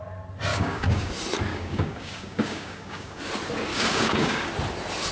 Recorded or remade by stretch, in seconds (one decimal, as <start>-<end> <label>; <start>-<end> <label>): 0.0-0.5 recorded; 0.5-1.1 remade; 1.1-1.5 recorded; 1.5-3.2 remade; 3.2-3.7 recorded; 3.7-4.5 remade; 4.5-5.1 recorded

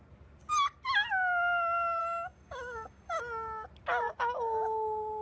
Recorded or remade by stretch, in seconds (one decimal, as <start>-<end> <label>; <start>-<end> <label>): 0.0-2.0 recorded; 2.0-3.2 remade; 3.2-5.2 recorded

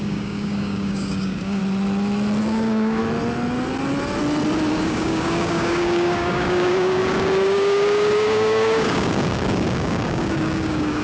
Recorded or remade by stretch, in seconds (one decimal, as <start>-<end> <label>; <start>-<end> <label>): 0.0-1.6 remade; 1.6-2.4 recorded; 2.4-3.0 remade; 3.0-4.7 recorded; 4.7-11.0 remade

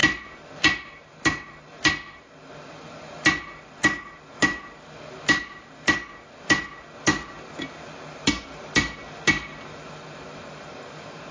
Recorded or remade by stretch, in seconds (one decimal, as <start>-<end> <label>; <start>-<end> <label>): 0.0-11.3 recorded

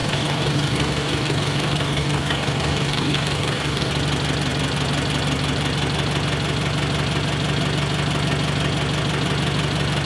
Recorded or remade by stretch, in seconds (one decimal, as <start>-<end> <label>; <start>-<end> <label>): 0.0-3.9 remade; 3.9-10.1 recorded

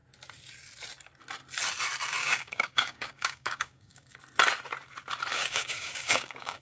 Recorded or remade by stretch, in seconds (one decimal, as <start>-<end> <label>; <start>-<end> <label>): 0.0-2.2 recorded; 2.2-4.2 remade; 4.2-5.3 recorded; 5.3-6.6 remade

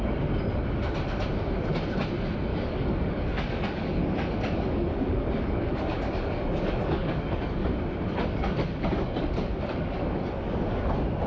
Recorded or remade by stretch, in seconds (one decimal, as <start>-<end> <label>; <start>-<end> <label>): 0.0-2.5 recorded; 2.5-7.7 remade; 7.7-8.2 recorded; 8.2-10.7 remade; 10.7-11.3 recorded